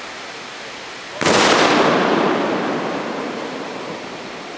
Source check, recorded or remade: recorded